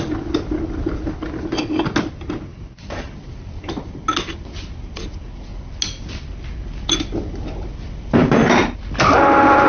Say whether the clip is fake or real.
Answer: real